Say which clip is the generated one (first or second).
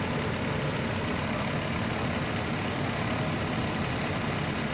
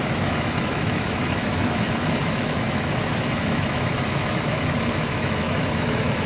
second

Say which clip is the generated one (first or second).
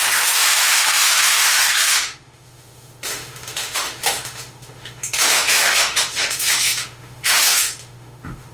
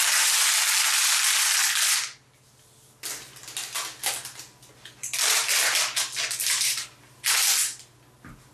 first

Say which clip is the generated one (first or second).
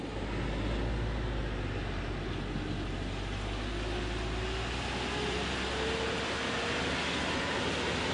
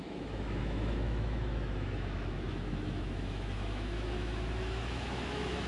second